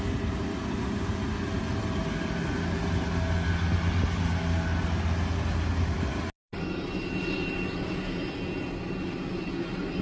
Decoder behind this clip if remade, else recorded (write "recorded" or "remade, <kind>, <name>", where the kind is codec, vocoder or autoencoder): recorded